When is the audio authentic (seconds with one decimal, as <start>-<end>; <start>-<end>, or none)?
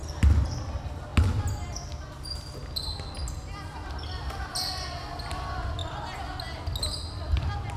0.0-7.8